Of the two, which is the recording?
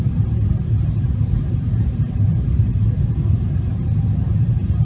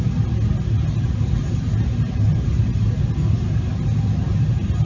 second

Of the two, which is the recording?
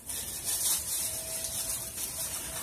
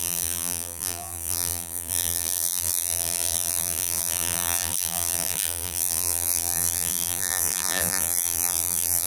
first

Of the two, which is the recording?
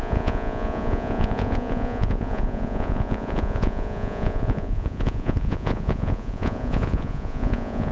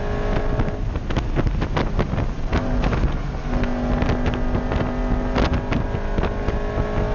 second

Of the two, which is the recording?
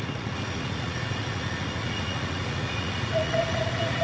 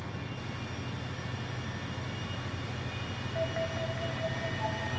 second